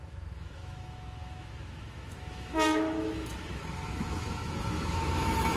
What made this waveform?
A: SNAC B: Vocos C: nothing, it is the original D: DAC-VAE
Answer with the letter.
D